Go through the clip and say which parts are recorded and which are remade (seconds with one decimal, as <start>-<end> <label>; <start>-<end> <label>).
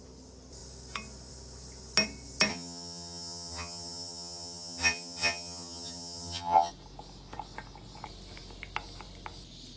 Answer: 0.0-2.5 recorded; 2.5-6.7 remade; 6.7-9.8 recorded